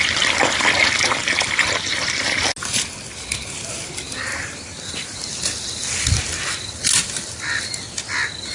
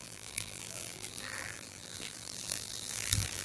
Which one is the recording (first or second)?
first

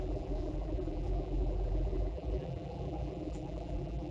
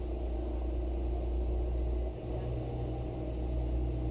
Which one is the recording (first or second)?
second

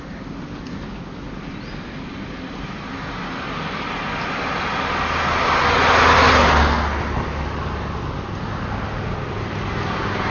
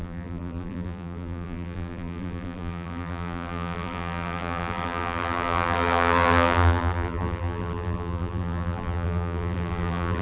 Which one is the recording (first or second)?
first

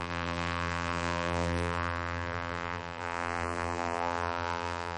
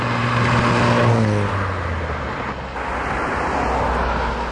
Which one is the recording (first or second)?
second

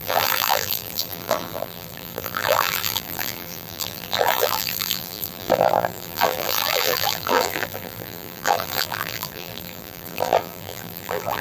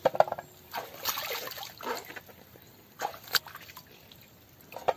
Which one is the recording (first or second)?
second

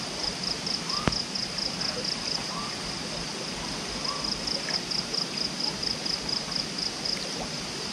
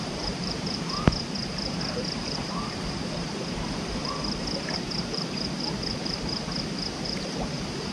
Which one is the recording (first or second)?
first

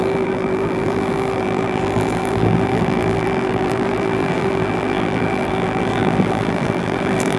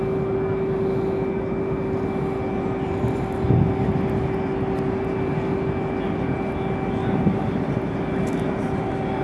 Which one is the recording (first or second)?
second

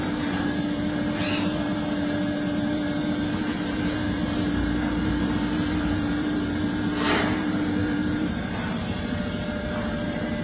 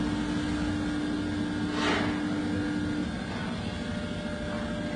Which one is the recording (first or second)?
second